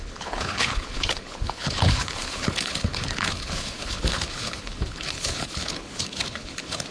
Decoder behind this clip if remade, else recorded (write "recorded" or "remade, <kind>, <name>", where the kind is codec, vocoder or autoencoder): remade, codec, HILCodec